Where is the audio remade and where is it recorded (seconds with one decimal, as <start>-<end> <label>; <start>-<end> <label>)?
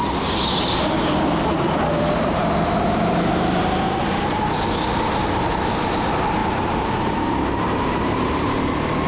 0.0-6.4 recorded; 6.4-8.6 remade; 8.6-9.1 recorded